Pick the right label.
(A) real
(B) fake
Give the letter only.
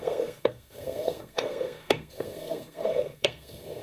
B